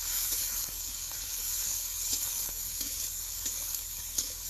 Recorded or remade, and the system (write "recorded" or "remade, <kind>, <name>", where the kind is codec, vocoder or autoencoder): remade, codec, DAC